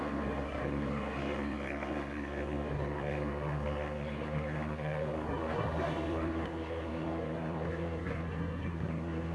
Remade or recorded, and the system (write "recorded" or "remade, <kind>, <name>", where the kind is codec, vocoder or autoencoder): remade, codec, SNAC